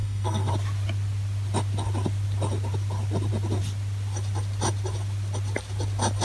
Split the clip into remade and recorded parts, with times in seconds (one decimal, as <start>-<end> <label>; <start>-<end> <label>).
0.0-0.5 remade; 0.5-6.2 recorded